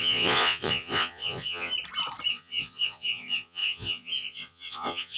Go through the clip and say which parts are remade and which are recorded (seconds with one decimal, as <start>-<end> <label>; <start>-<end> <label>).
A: 0.0-1.7 remade; 1.7-2.3 recorded; 2.3-5.2 remade